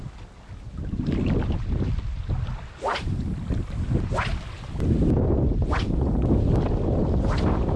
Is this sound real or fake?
real